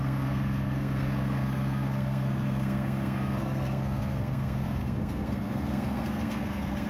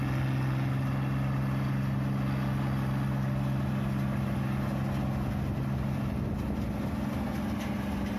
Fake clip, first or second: first